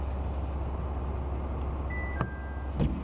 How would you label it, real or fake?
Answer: real